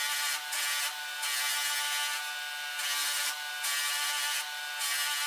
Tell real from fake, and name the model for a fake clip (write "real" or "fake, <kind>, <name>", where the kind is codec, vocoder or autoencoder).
real